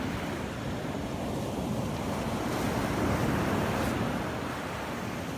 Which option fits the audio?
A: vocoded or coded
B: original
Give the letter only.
B